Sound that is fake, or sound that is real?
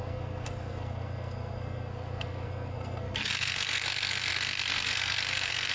fake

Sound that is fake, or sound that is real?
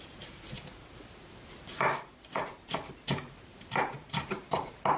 real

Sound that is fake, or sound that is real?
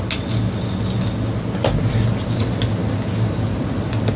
real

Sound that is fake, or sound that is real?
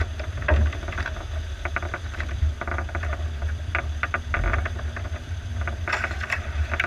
real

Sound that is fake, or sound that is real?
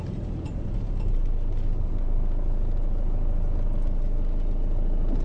real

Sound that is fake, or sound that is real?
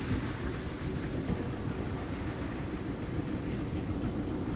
real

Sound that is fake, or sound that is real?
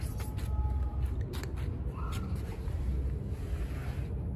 real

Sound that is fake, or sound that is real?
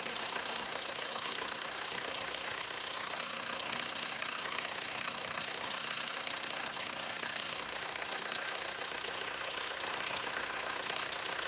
fake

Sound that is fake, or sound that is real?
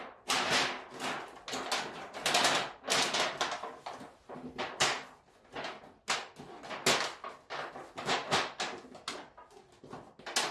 real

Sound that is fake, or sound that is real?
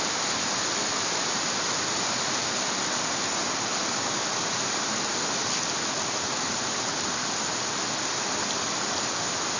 real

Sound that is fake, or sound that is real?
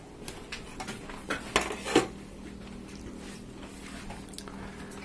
real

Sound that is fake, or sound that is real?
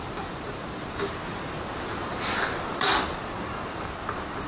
fake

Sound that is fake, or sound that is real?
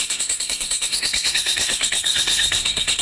fake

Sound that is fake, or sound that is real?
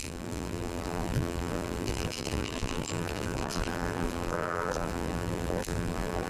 fake